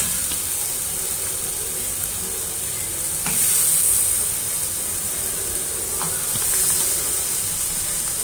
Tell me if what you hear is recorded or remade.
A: recorded